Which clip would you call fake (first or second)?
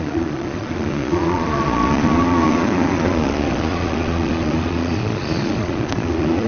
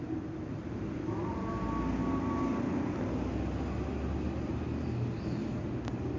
first